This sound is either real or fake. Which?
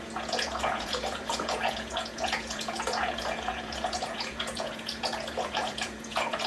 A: fake